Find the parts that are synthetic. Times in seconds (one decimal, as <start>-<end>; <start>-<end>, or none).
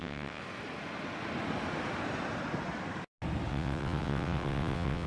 0.0-0.4; 3.5-5.1